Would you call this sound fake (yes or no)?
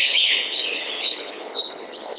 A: yes